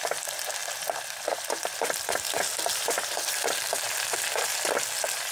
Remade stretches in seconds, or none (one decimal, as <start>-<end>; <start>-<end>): 0.6-3.8